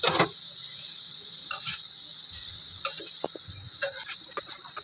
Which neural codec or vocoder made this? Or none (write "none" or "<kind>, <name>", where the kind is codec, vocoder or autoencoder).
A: none